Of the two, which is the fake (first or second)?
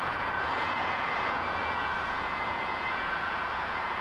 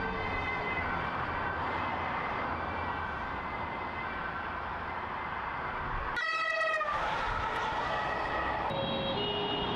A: first